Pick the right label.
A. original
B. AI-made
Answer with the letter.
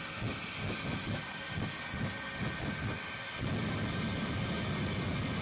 A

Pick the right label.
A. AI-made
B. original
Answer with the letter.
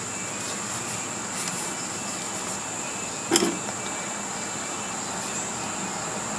B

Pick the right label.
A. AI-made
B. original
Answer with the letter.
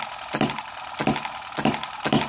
B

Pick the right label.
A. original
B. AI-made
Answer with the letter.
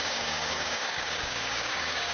B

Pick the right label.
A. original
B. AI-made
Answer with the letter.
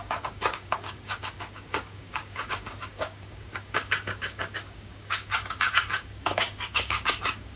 B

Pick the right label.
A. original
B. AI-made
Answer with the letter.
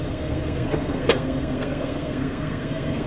B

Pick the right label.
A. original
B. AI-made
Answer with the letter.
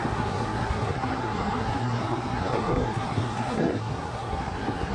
B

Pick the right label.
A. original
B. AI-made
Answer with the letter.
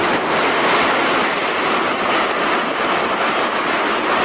A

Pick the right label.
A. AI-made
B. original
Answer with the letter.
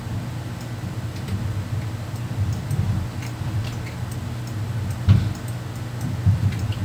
B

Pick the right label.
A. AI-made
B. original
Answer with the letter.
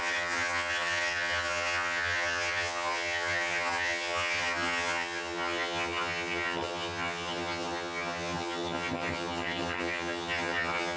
A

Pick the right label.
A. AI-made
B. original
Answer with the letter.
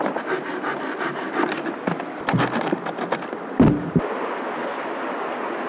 B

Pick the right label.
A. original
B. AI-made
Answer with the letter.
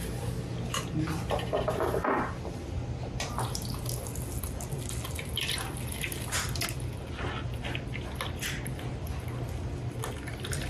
A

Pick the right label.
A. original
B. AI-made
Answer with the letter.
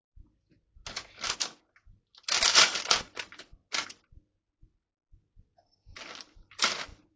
A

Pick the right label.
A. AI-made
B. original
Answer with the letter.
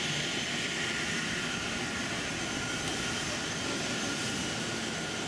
B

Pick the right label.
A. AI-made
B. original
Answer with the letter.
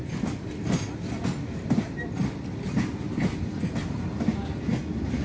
B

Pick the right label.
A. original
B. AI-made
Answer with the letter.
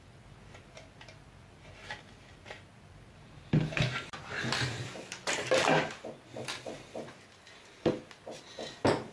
A